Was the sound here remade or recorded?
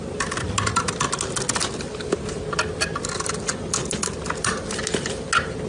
recorded